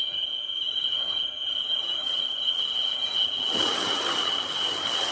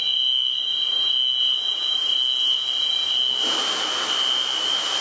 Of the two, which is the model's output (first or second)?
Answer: first